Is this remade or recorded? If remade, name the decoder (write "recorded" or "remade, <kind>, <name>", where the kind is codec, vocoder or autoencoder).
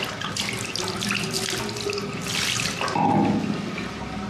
recorded